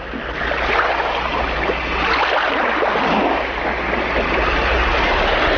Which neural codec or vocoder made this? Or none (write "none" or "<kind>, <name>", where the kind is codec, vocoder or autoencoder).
none